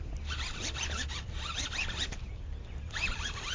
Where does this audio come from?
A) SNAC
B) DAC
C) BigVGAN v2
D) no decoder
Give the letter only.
D